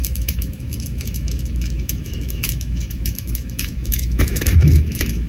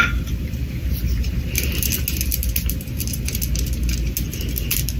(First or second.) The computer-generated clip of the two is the first